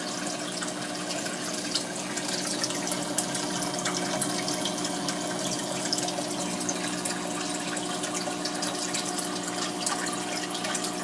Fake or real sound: real